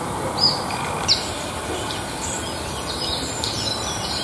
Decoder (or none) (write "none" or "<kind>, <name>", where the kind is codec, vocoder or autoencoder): none